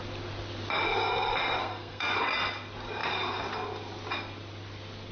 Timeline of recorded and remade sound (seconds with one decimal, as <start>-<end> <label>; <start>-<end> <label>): 0.0-1.6 recorded; 1.6-2.2 remade; 2.2-5.1 recorded